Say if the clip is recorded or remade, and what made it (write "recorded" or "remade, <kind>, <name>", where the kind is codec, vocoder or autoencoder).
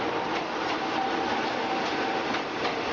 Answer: recorded